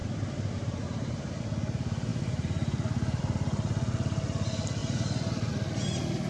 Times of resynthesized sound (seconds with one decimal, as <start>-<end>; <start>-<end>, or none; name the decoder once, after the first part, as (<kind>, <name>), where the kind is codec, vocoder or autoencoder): 0.0-1.4 (vocoder, BigVGAN v2); 2.1-3.2; 4.8-5.5

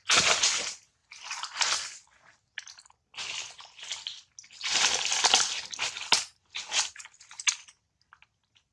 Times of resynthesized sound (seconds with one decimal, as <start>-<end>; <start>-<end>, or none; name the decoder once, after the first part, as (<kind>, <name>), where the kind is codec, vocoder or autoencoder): none

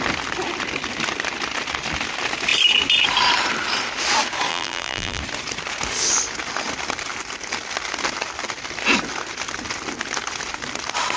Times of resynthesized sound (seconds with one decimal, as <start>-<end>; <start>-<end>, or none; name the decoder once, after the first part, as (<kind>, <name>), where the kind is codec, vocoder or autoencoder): 4.5-5.2 (vocoder, BigVGAN v2)